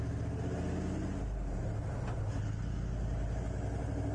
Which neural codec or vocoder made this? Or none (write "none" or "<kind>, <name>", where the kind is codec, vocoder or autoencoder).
none